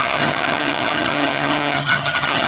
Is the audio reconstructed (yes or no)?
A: yes